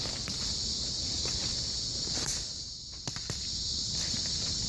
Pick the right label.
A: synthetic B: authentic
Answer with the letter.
B